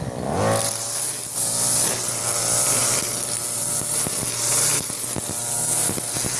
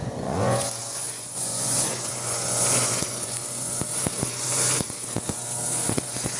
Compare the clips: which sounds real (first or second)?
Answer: first